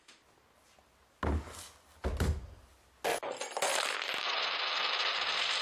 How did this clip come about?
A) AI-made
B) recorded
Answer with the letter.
B